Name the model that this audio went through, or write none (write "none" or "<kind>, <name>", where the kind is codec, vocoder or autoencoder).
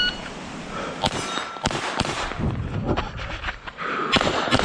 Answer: none